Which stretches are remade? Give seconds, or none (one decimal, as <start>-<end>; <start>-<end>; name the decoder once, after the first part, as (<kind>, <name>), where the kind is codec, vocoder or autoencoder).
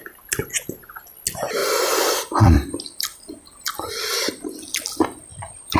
1.6-3.9 (vocoder, BigVGAN v2); 5.3-5.8